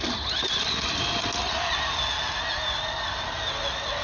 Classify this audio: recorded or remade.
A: recorded